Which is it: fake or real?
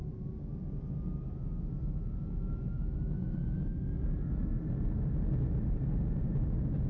real